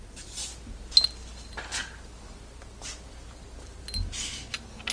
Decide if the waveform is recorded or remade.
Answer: recorded